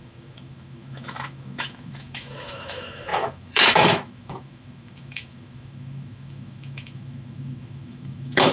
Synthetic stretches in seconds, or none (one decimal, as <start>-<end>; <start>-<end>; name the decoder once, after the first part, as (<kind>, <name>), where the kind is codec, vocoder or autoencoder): 0.0-8.5 (autoencoder, DAC-VAE)